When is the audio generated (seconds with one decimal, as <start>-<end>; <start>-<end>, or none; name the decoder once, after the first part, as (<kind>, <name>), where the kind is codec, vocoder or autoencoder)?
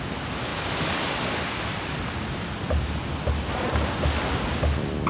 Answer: 0.5-3.0 (vocoder, BigVGAN v2)